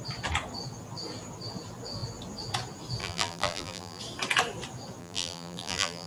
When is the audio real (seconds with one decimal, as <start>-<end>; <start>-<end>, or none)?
0.0-3.0; 4.0-5.0

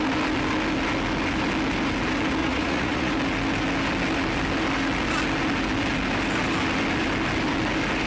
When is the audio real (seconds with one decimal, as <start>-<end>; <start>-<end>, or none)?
0.0-2.4; 3.1-8.1